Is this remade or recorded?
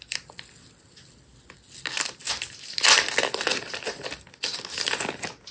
recorded